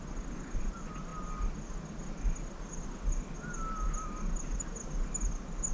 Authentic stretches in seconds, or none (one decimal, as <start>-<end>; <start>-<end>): 0.0-5.7